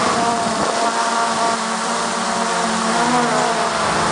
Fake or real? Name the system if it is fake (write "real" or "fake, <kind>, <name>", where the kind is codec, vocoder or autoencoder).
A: real